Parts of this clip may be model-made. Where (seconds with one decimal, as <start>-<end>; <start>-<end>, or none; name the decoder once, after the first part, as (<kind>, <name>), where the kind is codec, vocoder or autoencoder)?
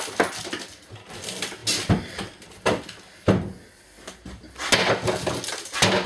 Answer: none